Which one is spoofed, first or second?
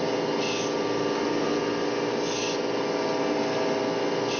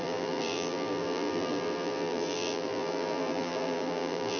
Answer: second